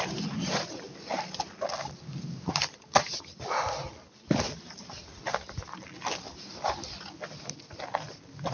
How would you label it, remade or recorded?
recorded